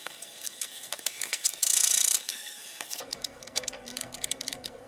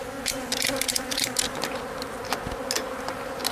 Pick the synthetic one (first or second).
first